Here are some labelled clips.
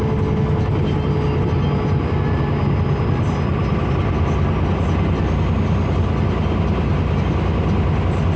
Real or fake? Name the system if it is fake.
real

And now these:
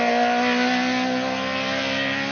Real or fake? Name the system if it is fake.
real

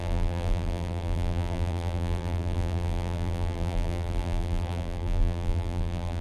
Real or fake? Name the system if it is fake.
fake, vocoder, BigVGAN v2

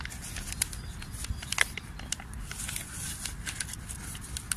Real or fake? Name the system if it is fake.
real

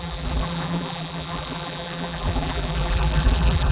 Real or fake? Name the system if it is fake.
fake, vocoder, BigVGAN v2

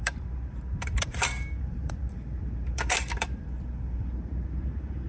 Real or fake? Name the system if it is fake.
fake, vocoder, BigVGAN v2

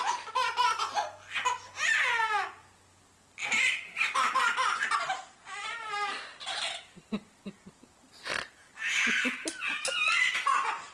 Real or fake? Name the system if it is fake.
real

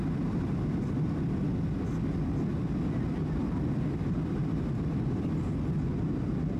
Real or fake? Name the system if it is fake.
real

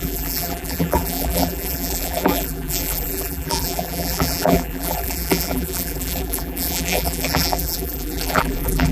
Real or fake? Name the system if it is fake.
fake, vocoder, BigVGAN v2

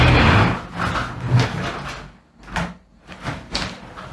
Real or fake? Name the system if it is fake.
real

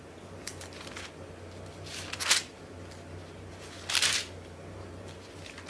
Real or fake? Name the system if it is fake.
real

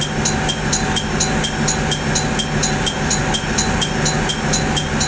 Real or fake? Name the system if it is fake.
real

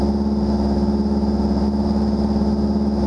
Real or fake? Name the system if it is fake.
real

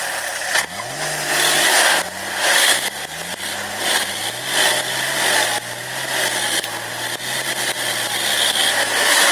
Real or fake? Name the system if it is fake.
real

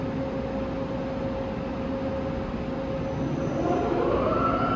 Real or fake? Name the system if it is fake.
real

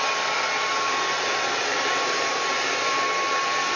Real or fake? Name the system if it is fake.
fake, vocoder, BigVGAN v2